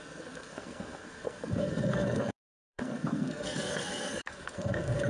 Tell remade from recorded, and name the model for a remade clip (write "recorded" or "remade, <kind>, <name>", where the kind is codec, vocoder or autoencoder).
remade, codec, SNAC